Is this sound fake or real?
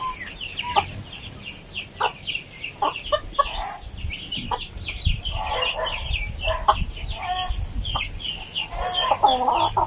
real